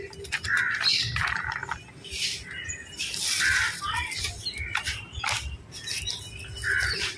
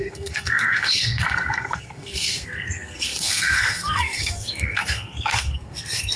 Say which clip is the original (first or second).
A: first